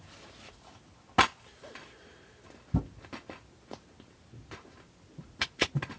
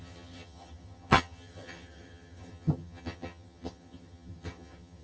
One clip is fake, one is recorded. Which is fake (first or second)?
second